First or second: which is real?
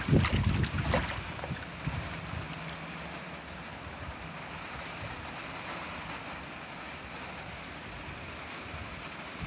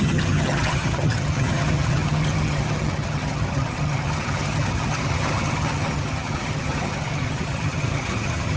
first